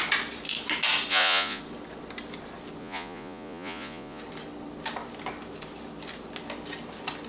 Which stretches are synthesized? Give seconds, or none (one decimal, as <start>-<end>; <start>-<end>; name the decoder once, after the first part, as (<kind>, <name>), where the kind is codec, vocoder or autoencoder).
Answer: 1.1-1.6 (vocoder, Vocos); 2.8-4.2